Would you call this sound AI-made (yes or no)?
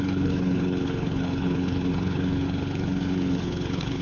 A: yes